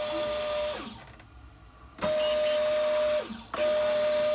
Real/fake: real